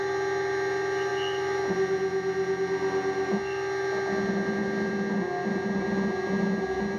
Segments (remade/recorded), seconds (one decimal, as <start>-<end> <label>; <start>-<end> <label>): 0.0-7.0 recorded